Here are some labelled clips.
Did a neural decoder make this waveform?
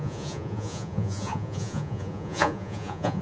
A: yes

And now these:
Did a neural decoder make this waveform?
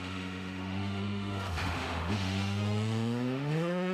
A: yes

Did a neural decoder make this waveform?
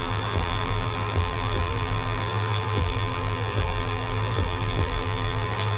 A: yes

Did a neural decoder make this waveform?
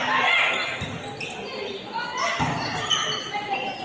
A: no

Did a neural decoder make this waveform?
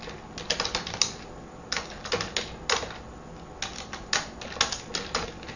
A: no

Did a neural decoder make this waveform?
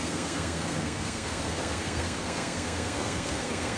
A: yes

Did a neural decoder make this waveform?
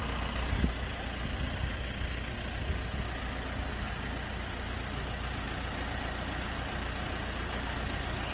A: no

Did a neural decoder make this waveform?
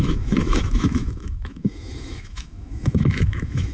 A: yes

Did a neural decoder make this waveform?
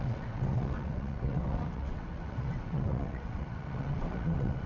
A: yes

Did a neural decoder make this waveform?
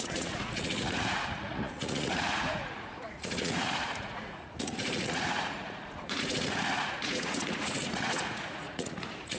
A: yes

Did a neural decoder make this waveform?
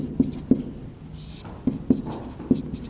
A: no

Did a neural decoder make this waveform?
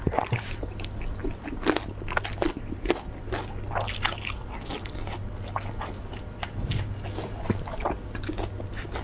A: no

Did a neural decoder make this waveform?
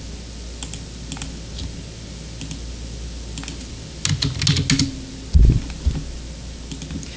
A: no